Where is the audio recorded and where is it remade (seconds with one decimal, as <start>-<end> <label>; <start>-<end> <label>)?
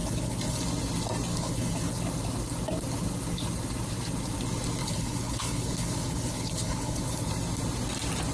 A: 0.0-0.6 remade; 0.6-1.3 recorded; 1.3-2.0 remade; 2.0-4.8 recorded; 4.8-7.3 remade; 7.3-8.3 recorded